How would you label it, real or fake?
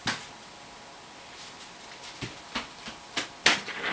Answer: real